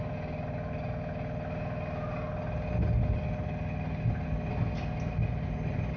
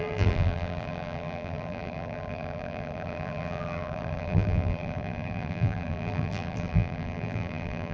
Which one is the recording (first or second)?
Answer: first